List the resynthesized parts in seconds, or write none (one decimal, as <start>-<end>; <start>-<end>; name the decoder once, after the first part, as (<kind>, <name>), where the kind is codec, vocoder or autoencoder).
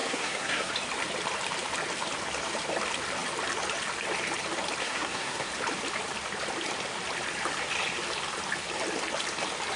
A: 0.0-0.7 (codec, SNAC); 4.8-5.5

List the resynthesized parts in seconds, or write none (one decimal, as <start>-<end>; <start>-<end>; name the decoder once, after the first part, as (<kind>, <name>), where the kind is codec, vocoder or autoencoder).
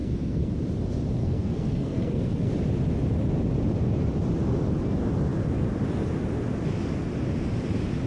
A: 0.0-0.5 (codec, SNAC); 1.2-2.5